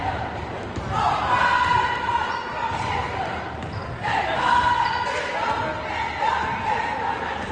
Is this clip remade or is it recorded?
recorded